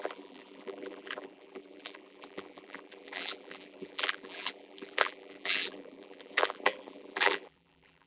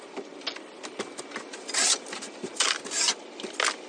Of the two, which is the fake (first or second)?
first